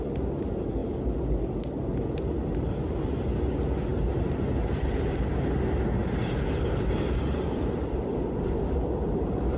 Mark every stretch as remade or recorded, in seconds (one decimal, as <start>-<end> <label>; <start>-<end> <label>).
0.0-6.0 recorded; 6.0-9.0 remade; 9.0-9.6 recorded